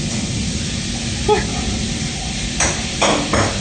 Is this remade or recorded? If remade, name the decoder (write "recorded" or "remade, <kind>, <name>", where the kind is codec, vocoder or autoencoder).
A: recorded